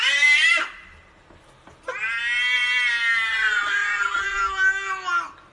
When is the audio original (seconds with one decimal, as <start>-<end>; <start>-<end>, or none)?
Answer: 0.0-3.3; 4.4-5.5